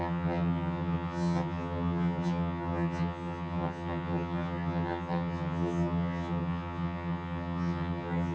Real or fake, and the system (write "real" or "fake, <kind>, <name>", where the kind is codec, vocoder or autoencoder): fake, vocoder, HiFi-GAN